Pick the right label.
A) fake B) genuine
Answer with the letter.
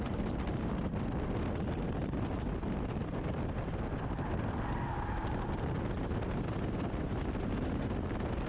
B